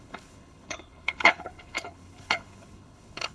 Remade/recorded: remade